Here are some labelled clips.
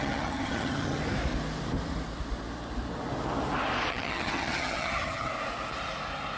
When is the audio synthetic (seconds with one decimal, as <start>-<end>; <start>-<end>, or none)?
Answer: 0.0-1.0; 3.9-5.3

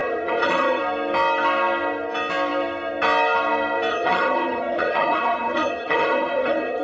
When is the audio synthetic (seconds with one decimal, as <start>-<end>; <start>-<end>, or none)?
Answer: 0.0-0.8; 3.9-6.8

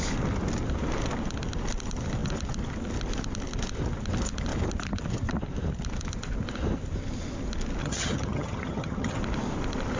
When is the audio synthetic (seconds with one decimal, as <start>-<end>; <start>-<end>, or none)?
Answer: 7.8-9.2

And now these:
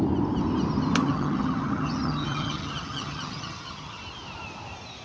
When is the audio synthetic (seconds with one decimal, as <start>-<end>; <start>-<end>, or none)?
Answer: 1.0-4.0

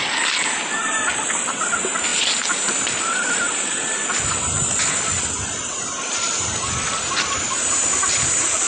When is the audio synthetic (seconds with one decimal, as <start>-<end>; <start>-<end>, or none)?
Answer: none

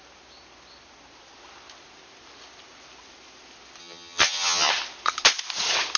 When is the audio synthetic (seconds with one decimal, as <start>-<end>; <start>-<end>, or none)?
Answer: 3.8-4.7